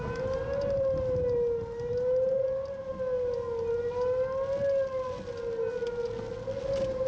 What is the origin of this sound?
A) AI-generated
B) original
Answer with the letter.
B